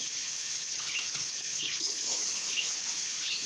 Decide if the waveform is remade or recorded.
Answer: remade